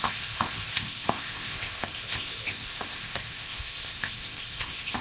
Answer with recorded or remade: remade